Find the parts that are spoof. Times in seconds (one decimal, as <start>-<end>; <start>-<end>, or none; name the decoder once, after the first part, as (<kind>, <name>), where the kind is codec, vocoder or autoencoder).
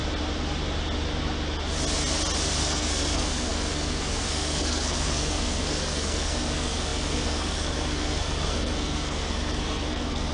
2.6-10.3 (codec, SNAC)